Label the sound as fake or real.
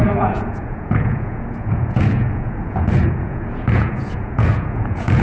fake